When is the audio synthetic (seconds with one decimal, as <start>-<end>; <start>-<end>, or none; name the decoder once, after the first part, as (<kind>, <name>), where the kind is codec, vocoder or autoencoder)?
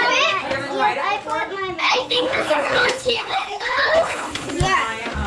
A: 1.8-4.5 (codec, HILCodec)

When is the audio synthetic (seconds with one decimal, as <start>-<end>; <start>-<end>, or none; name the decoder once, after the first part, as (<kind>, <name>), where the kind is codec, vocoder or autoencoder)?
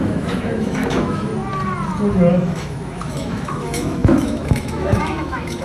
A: 0.0-1.3 (autoencoder, DAC-VAE); 2.3-5.6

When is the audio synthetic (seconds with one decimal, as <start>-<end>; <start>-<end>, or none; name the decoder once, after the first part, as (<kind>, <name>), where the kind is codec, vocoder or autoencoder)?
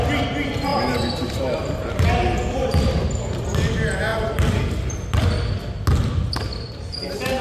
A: 0.7-1.4 (vocoder, BigVGAN v2); 4.1-4.6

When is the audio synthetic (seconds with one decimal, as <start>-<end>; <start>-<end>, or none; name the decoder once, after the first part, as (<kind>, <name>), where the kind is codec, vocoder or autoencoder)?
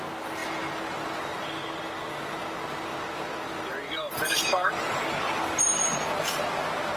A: 2.9-4.7 (vocoder, BigVGAN v2)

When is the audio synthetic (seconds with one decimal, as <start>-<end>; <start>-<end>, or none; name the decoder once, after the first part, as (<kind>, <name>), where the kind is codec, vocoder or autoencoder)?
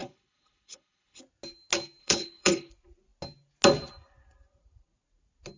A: 0.0-1.2 (codec, HILCodec); 2.0-2.7